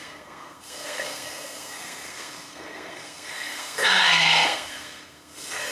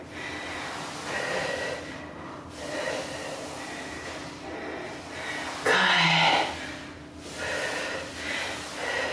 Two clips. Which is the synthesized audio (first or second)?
first